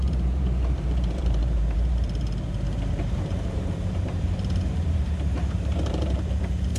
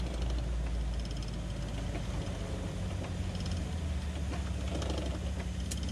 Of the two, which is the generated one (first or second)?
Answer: first